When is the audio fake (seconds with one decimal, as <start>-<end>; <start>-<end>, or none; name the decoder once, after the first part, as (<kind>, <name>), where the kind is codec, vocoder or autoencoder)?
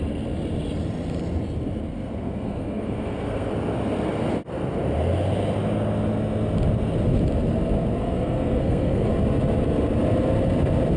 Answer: 1.9-3.5 (codec, SNAC); 8.0-9.1